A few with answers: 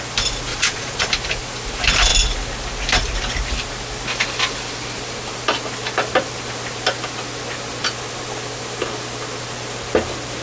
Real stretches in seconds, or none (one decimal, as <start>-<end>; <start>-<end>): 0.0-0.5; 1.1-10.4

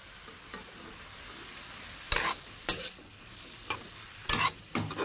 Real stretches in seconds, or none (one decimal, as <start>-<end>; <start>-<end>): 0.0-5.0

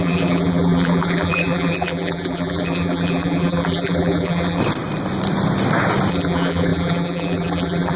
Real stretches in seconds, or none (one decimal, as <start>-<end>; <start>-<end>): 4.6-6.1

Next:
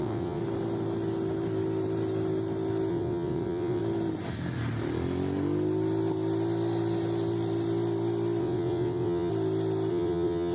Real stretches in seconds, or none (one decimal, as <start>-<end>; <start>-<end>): 0.4-2.9; 3.8-8.4; 9.3-9.9